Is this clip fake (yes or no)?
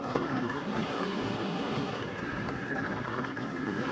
yes